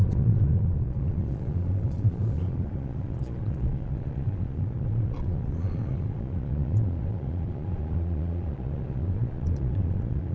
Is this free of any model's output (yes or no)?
no